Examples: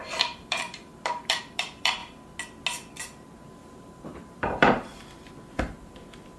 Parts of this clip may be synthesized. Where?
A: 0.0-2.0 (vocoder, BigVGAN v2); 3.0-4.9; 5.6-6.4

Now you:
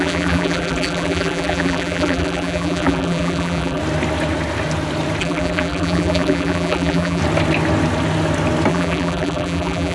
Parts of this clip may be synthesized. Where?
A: 0.0-3.8 (vocoder, BigVGAN v2); 5.2-7.2; 8.7-9.9

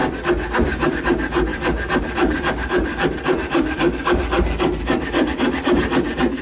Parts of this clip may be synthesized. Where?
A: 0.9-6.4 (vocoder, BigVGAN v2)

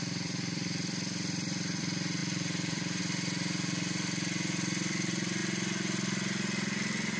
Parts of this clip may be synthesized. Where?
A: 0.0-5.4 (vocoder, BigVGAN v2)